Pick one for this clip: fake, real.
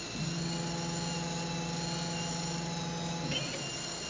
real